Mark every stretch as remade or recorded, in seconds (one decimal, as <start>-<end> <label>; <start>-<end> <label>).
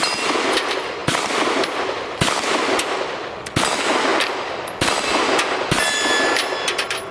0.0-7.1 recorded